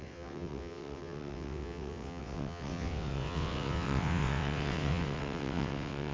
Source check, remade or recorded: remade